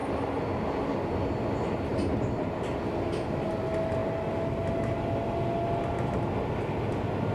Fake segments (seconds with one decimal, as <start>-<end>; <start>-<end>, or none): none